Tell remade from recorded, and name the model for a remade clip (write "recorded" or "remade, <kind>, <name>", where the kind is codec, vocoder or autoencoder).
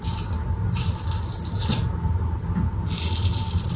recorded